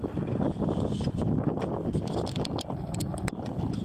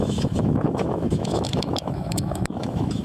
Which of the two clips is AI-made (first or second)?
second